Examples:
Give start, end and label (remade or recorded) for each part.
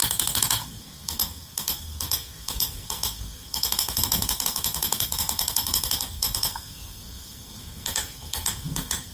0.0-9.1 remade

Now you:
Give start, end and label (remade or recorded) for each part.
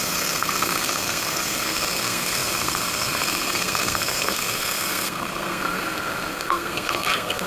0.0-7.5 remade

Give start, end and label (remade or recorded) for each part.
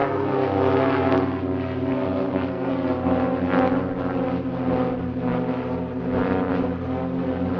0.0-1.4 remade; 1.4-1.9 recorded; 1.9-2.7 remade; 2.7-7.6 recorded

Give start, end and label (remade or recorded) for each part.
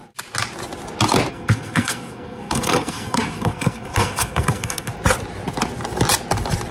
0.0-1.3 recorded; 1.3-4.9 remade; 4.9-6.7 recorded